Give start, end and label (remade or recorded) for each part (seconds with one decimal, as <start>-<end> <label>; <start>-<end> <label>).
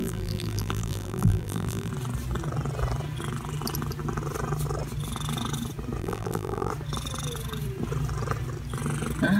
0.0-1.9 remade; 1.9-6.0 recorded; 6.0-6.7 remade; 6.7-9.4 recorded